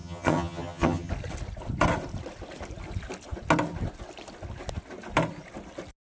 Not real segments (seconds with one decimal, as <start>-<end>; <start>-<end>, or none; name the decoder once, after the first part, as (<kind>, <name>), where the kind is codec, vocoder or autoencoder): 0.0-1.1 (vocoder, HiFi-GAN)